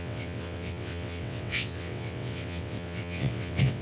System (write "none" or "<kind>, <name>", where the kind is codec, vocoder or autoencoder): vocoder, WaveNeXt